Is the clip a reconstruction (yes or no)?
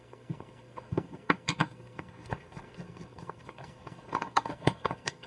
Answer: yes